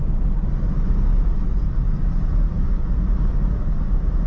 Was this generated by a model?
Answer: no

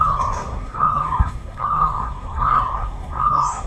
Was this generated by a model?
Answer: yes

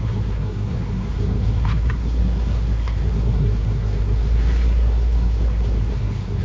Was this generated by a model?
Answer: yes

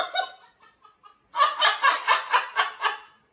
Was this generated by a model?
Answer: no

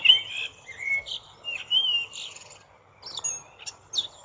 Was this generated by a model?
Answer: no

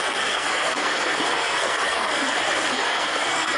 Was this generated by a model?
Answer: yes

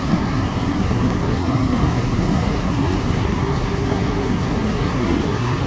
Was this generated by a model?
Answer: yes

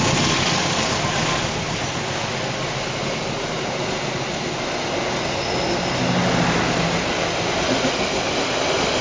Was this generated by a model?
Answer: no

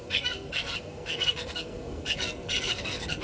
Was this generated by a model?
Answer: yes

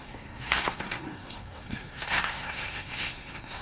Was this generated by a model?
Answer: yes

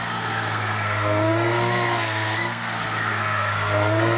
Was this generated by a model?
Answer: yes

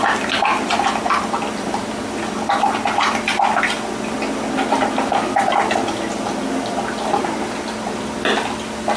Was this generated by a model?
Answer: no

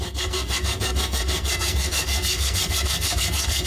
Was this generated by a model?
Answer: yes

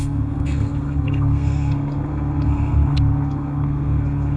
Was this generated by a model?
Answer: yes